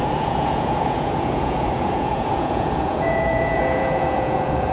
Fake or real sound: fake